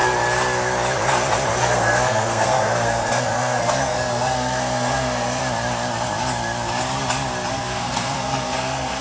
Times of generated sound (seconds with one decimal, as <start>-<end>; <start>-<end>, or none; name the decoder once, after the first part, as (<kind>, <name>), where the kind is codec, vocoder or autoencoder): 1.6-5.4 (codec, SNAC); 7.5-9.0